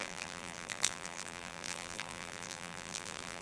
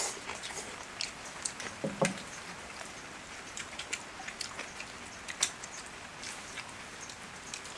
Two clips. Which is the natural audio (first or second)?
second